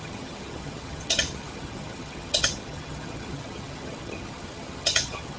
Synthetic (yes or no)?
yes